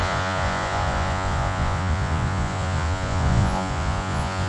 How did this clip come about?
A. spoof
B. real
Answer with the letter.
A